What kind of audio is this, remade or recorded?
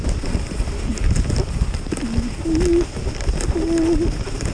recorded